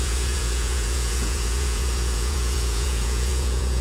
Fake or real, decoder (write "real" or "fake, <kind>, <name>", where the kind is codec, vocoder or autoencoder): fake, vocoder, Vocos